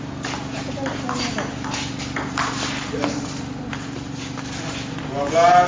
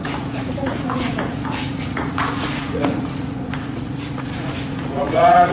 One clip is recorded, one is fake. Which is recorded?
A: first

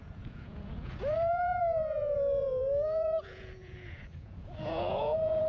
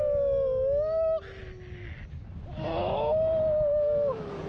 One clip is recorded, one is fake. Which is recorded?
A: second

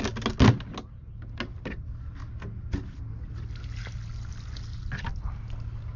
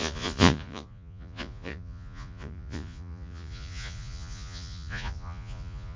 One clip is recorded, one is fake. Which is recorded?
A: first